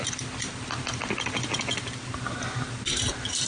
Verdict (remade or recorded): recorded